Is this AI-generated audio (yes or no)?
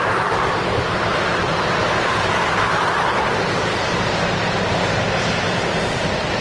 yes